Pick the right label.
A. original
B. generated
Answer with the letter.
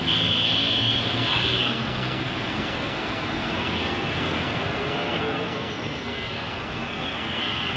B